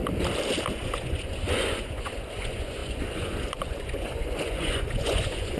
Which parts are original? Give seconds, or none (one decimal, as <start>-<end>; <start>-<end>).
0.0-0.7